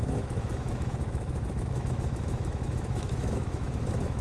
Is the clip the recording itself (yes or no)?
no